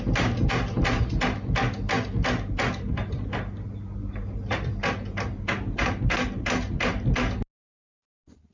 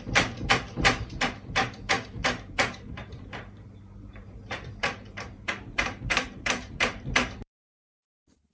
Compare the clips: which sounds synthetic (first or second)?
second